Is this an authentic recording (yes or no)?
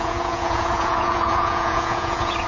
no